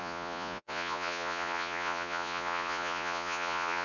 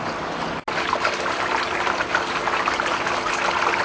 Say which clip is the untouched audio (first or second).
second